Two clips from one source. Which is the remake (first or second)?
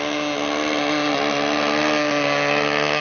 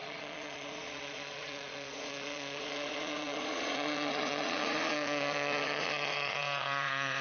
second